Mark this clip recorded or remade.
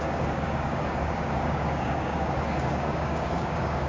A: remade